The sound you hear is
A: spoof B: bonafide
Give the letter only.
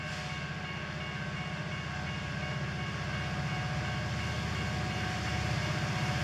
B